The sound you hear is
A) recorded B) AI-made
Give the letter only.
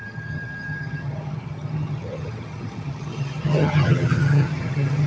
B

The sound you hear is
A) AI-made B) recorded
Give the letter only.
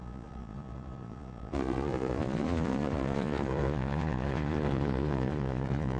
A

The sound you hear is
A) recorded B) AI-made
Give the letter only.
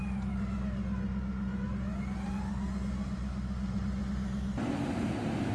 A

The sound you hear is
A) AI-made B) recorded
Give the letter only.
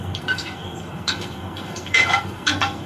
A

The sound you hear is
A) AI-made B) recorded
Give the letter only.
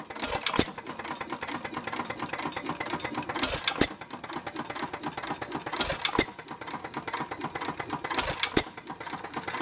B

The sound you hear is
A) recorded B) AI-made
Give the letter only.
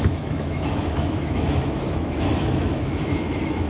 B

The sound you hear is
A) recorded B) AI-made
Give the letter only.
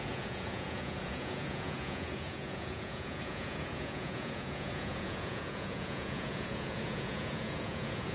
B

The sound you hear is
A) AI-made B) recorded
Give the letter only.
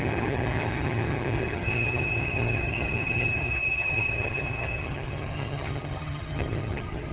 A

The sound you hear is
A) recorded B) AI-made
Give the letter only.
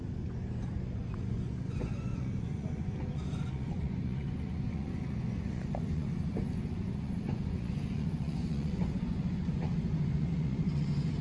B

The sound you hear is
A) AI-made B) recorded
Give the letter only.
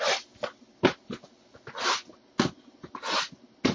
B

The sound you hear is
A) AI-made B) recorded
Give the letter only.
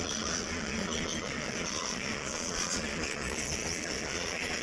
A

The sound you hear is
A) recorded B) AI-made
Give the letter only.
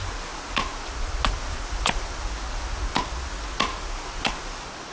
A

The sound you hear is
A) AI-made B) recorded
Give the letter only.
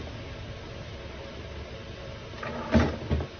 B